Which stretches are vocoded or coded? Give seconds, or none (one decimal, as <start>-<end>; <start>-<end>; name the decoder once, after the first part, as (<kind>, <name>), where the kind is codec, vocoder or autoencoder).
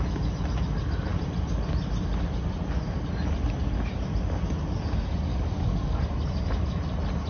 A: 5.3-6.0 (codec, DAC)